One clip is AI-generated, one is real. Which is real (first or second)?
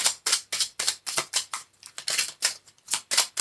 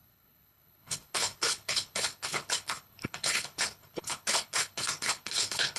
first